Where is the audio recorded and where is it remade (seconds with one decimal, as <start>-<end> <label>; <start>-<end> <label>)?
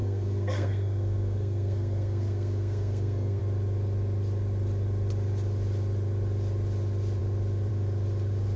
0.0-3.4 remade; 3.4-8.6 recorded